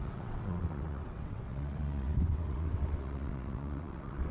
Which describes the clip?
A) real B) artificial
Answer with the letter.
B